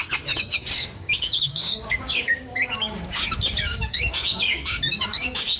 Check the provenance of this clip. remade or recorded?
remade